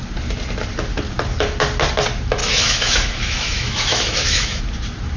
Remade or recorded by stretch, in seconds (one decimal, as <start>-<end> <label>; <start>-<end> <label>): 0.0-2.4 recorded; 2.4-4.6 remade; 4.6-5.2 recorded